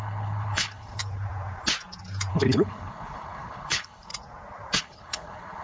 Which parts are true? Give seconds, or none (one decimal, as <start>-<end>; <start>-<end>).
1.0-2.3; 4.1-4.8